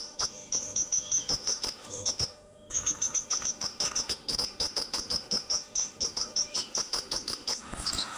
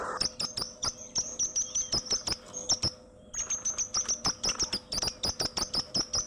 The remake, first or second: first